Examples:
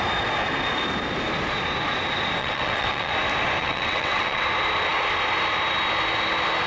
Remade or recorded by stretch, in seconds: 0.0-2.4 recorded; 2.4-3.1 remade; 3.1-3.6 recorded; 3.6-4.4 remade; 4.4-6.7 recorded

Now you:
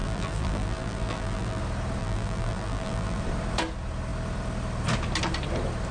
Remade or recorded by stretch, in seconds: 0.0-1.6 remade; 1.6-2.0 recorded; 2.0-3.2 remade; 3.2-5.9 recorded

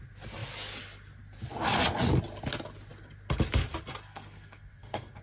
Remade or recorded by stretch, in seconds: 0.0-4.1 recorded; 4.1-5.2 remade

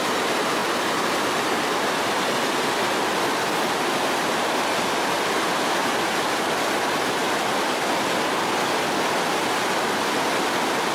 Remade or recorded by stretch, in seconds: 0.0-10.9 recorded

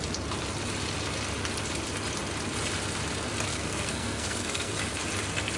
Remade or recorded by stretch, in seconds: 0.0-3.5 recorded; 3.5-4.7 remade; 4.7-5.6 recorded

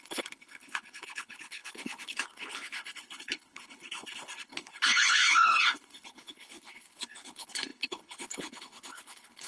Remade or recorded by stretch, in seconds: 0.0-9.5 remade

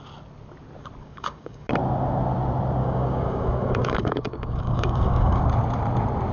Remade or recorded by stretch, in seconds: 0.0-1.0 recorded; 1.0-1.7 remade; 1.7-2.8 recorded; 2.8-5.4 remade; 5.4-6.3 recorded

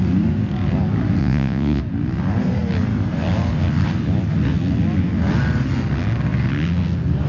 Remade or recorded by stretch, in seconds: 0.0-1.2 recorded; 1.2-1.8 remade; 1.8-7.3 recorded